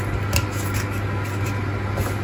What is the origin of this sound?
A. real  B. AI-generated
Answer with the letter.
A